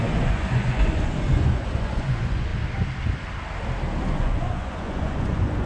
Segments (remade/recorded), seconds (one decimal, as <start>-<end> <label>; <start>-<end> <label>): 0.0-2.5 remade; 2.5-4.0 recorded; 4.0-5.7 remade